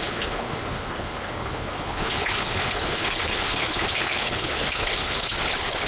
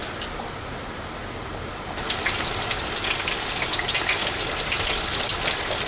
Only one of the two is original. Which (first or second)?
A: second